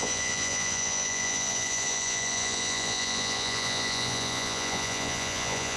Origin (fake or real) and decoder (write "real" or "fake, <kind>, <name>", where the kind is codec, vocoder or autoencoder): fake, vocoder, Vocos